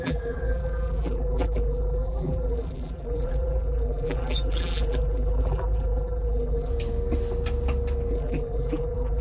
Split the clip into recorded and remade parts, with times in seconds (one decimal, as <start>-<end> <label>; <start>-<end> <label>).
0.0-6.7 remade; 6.7-8.1 recorded; 8.1-9.2 remade